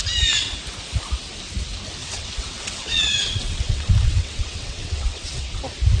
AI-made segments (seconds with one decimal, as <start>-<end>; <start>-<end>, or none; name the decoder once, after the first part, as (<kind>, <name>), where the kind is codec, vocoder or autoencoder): 2.0-5.6 (vocoder, WaveNeXt)